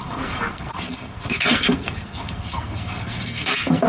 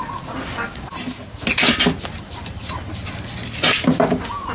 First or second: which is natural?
second